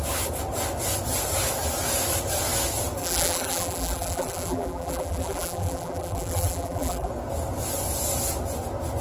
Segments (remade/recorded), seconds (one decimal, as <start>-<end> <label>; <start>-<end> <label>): 0.0-3.0 recorded; 3.0-7.1 remade; 7.1-9.0 recorded

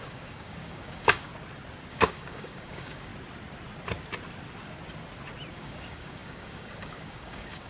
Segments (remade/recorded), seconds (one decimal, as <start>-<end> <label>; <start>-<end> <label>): 0.0-1.3 remade; 1.3-1.9 recorded; 1.9-3.1 remade; 3.1-5.5 recorded; 5.5-7.7 remade

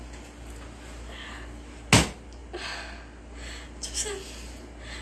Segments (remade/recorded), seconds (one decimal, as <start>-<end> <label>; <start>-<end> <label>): 0.0-5.0 recorded

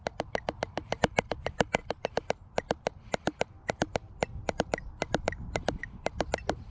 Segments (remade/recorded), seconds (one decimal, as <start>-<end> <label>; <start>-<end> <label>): 0.0-6.7 remade

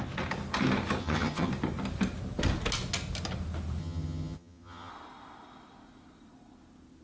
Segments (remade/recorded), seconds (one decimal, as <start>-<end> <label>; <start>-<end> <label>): 0.0-1.0 recorded; 1.0-1.5 remade; 1.5-3.8 recorded; 3.8-4.9 remade; 4.9-7.0 recorded

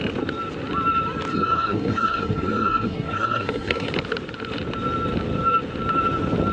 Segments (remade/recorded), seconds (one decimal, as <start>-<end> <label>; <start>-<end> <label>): 0.0-1.3 recorded; 1.3-3.9 remade; 3.9-6.5 recorded

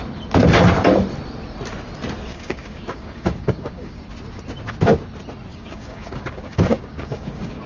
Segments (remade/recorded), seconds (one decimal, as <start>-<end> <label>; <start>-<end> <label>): 0.0-2.3 recorded; 2.3-4.0 remade; 4.0-5.5 recorded; 5.5-7.7 remade

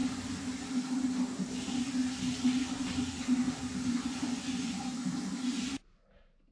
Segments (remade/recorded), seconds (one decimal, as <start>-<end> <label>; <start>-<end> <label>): 0.0-3.9 recorded; 3.9-5.0 remade; 5.0-6.5 recorded